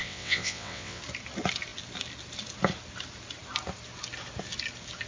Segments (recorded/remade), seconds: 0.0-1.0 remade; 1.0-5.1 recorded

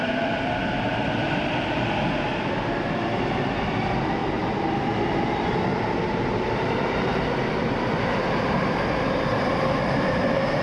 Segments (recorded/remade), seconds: 0.0-10.6 recorded

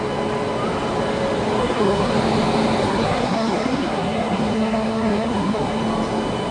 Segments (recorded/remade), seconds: 0.0-1.6 recorded; 1.6-2.1 remade; 2.1-2.8 recorded; 2.8-5.8 remade; 5.8-6.5 recorded

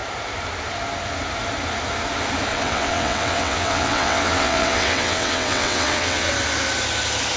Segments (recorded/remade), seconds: 0.0-2.5 recorded; 2.5-6.3 remade; 6.3-7.4 recorded